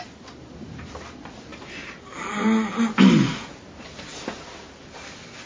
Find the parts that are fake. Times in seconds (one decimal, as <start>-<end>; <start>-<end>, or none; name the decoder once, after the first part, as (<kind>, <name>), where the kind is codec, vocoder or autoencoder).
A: none